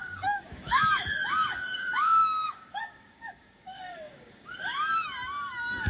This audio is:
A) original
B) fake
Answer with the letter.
B